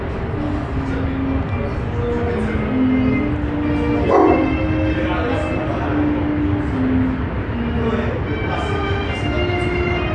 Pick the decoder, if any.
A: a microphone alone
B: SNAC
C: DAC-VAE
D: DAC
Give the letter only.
A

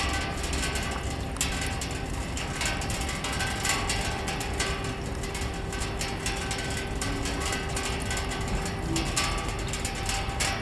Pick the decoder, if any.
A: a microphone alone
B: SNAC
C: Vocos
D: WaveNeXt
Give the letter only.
A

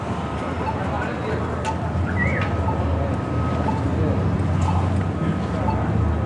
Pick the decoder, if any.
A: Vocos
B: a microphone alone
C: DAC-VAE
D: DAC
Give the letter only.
B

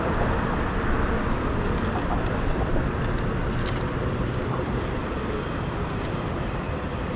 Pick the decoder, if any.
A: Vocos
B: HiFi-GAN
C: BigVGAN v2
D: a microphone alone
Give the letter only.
D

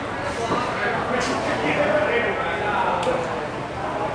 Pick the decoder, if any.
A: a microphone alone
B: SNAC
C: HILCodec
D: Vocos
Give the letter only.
A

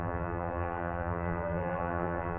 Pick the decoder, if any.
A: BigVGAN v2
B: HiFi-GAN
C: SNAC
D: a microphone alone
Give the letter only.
A